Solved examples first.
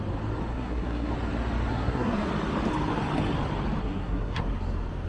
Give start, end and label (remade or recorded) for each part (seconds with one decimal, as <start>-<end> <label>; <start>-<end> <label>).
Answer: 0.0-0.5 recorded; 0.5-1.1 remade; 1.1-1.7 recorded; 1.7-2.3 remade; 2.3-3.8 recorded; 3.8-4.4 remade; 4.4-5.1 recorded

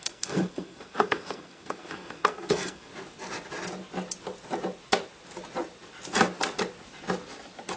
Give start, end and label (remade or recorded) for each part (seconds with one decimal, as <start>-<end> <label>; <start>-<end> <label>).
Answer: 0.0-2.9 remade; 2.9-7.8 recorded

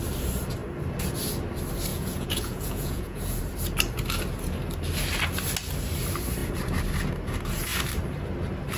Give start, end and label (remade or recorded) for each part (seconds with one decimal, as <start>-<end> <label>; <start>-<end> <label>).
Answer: 0.0-1.9 recorded; 1.9-3.4 remade; 3.4-8.8 recorded

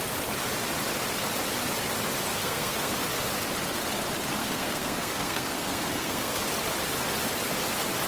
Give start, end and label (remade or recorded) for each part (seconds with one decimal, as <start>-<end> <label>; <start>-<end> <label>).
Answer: 0.0-2.3 recorded; 2.3-2.9 remade; 2.9-4.4 recorded; 4.4-6.4 remade; 6.4-8.1 recorded

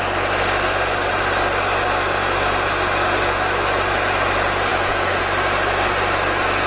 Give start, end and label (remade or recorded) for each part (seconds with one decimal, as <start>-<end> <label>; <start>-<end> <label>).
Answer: 0.0-4.7 recorded; 4.7-5.2 remade; 5.2-6.7 recorded

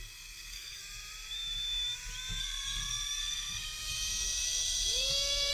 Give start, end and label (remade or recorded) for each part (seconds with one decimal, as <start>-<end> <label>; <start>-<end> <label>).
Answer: 0.0-0.8 remade; 0.8-2.4 recorded; 2.4-3.9 remade; 3.9-5.5 recorded